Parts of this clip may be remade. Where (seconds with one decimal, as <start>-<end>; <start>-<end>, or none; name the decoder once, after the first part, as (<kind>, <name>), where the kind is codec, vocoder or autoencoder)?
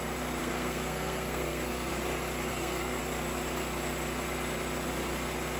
0.4-1.9 (codec, SNAC); 2.5-3.0